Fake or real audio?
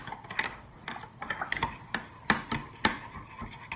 real